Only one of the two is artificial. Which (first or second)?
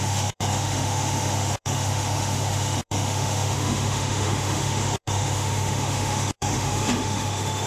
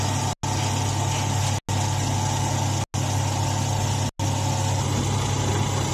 first